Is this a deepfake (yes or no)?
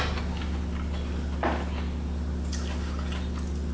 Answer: no